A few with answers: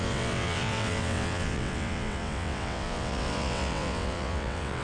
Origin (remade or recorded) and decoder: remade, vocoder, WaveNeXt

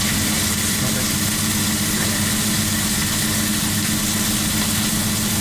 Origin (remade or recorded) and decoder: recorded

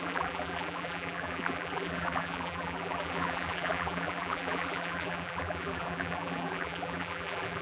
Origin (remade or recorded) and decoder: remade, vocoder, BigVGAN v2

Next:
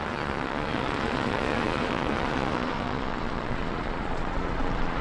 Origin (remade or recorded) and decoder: remade, vocoder, Vocos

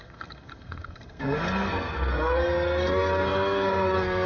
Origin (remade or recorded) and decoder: remade, codec, SNAC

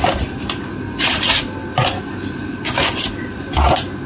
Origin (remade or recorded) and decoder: recorded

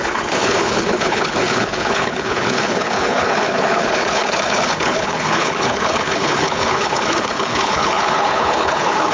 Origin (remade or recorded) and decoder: remade, codec, HILCodec